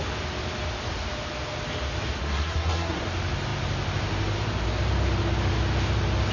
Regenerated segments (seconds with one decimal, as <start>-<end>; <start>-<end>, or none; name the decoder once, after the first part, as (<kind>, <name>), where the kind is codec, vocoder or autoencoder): 2.2-3.0 (codec, SNAC)